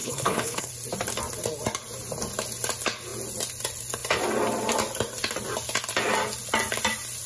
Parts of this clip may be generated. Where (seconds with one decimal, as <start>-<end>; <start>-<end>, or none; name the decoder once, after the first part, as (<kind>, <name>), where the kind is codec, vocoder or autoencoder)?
0.0-0.7 (codec, HILCodec)